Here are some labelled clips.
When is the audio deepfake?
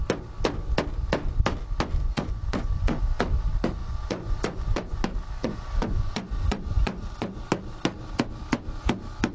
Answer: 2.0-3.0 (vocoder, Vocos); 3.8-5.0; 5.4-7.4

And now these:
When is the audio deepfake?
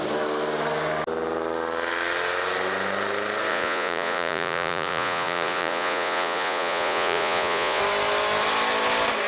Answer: 3.5-7.8 (vocoder, Vocos)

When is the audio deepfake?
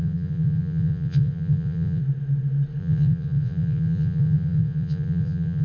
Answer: 0.0-2.0 (vocoder, Vocos); 2.8-5.6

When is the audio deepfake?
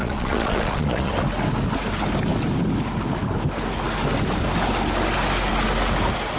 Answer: 0.0-1.1 (vocoder, Vocos)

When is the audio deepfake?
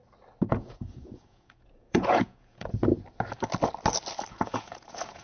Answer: 0.5-2.9 (vocoder, Vocos); 4.3-5.2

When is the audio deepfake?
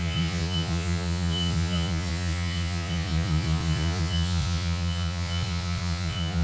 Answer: 0.0-6.4 (vocoder, Vocos)